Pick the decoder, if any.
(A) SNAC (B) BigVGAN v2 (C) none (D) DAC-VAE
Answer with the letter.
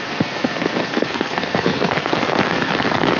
A